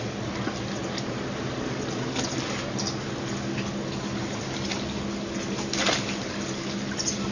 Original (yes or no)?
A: yes